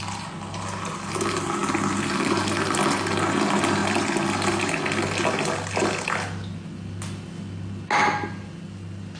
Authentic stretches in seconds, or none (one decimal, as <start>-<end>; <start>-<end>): 0.0-9.2